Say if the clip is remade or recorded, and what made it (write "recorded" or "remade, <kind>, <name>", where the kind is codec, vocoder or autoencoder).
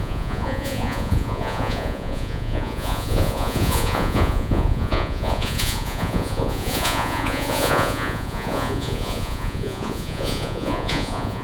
remade, vocoder, Vocos